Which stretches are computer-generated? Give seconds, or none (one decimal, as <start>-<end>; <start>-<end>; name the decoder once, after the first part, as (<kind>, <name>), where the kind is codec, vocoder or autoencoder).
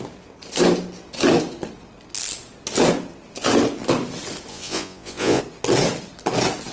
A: 4.5-5.4 (vocoder, Vocos)